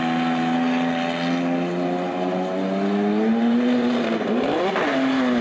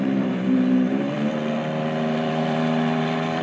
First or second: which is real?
first